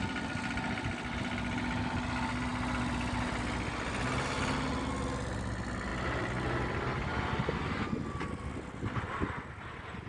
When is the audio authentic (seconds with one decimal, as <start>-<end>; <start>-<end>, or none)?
0.0-10.1

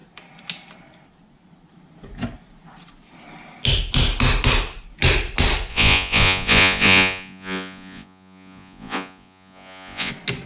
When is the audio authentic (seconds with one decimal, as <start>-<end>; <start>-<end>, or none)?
0.0-5.7; 10.1-10.5

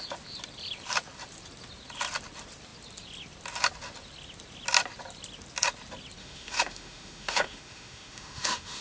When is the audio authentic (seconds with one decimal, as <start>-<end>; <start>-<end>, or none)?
0.0-6.2

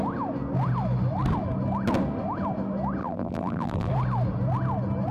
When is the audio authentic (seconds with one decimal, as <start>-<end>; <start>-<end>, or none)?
0.0-3.0; 3.9-5.1

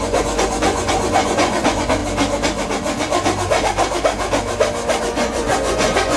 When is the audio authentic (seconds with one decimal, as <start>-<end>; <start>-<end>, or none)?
2.0-5.0

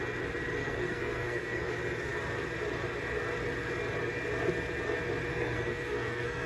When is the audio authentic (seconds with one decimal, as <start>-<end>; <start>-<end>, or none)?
0.0-0.6; 1.7-5.3